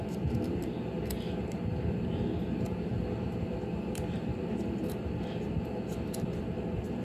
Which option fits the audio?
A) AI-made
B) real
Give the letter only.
B